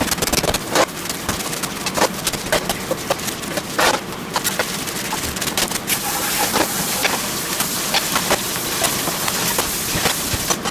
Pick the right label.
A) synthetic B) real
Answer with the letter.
B